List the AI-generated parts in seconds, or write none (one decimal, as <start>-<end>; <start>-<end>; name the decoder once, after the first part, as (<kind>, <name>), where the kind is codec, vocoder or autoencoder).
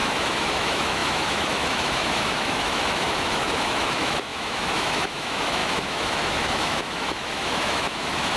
0.0-8.4 (autoencoder, DAC-VAE)